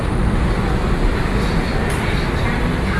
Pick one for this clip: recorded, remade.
recorded